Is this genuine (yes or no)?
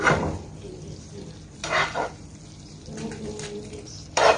no